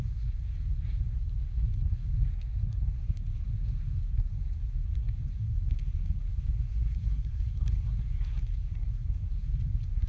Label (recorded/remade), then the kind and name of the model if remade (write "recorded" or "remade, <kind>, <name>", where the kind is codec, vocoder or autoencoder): remade, codec, SNAC